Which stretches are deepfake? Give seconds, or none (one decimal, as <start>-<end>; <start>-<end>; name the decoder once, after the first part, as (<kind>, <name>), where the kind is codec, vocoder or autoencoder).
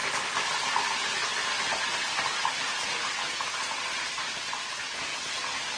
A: none